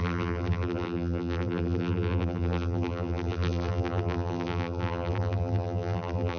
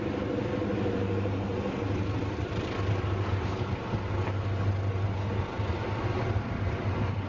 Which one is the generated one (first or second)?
first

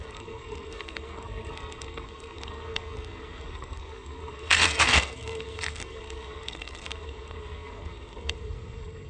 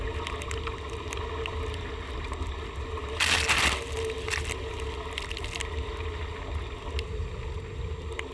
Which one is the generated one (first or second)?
first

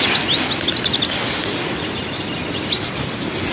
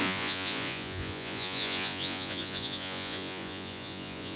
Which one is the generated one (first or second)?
second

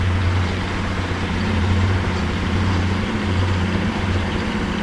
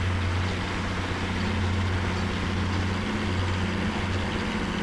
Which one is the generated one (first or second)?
first